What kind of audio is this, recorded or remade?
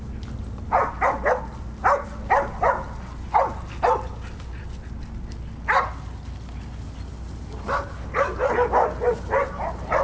recorded